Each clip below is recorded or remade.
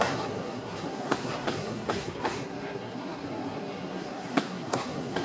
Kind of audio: remade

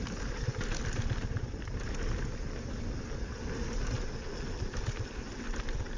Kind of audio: recorded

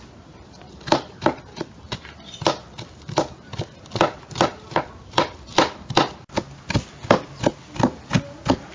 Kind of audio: recorded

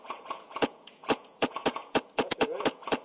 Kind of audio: remade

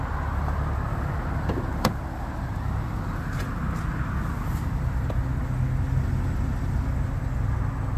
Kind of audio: recorded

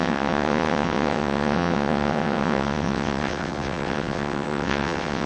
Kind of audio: remade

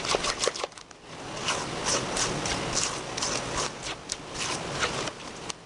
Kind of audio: recorded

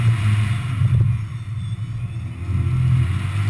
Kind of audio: recorded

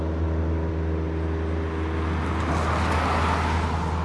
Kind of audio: recorded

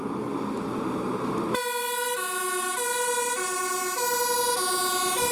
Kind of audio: recorded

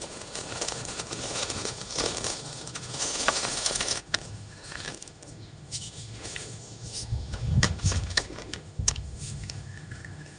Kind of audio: remade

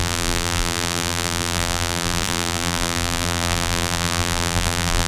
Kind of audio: remade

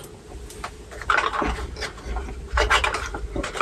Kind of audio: recorded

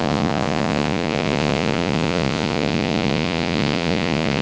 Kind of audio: remade